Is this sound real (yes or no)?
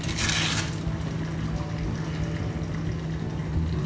yes